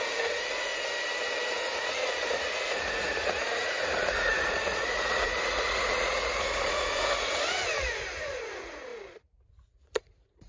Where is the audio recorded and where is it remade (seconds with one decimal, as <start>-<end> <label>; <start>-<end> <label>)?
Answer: 0.0-0.7 remade; 0.7-1.5 recorded; 1.5-10.5 remade